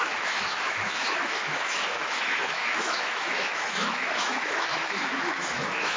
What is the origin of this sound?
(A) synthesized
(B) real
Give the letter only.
A